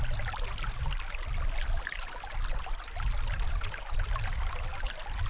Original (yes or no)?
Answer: yes